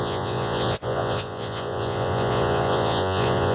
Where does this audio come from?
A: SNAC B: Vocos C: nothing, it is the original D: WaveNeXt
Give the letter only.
B